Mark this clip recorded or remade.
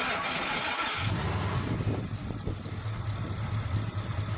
recorded